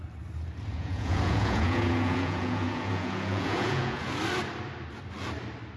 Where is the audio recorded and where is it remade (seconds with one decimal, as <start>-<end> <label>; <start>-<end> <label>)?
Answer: 0.0-0.7 recorded; 0.7-4.2 remade; 4.2-5.8 recorded